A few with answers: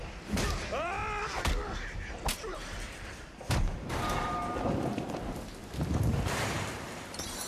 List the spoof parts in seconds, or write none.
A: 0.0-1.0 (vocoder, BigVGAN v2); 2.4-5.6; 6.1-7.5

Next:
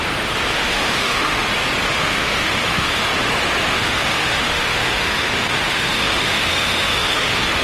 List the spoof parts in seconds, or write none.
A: 0.5-1.5 (autoencoder, DAC-VAE); 2.0-2.9; 3.6-7.6

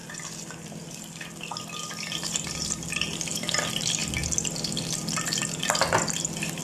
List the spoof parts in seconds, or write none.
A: 1.9-4.0 (vocoder, BigVGAN v2); 5.6-6.6

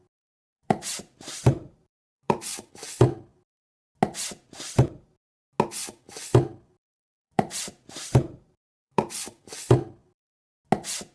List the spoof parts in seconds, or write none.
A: 0.5-2.7 (vocoder, BigVGAN v2); 6.9-9.5

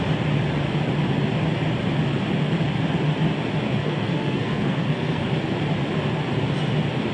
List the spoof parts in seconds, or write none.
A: 3.8-5.2 (codec, SNAC)

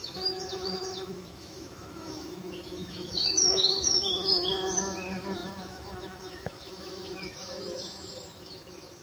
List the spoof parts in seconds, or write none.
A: 0.0-9.0 (autoencoder, DAC-VAE)

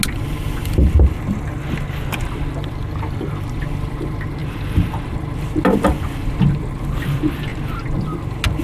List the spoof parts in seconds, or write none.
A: none